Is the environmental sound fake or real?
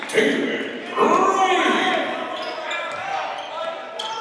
real